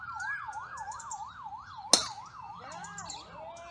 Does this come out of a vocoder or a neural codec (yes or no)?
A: no